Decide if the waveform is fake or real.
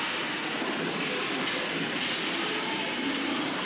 real